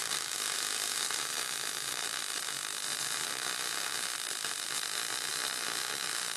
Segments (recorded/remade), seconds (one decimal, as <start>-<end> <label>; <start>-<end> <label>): 0.0-1.2 remade; 1.2-6.4 recorded